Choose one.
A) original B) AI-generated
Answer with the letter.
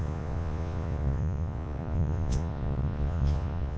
B